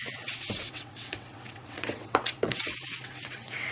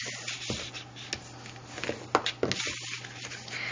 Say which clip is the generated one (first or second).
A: first